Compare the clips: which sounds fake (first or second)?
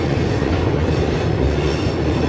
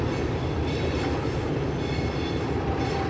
first